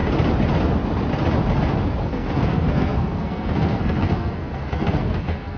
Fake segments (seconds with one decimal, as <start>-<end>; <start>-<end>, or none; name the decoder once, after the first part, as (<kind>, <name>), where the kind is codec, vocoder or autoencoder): 2.0-5.6 (codec, SNAC)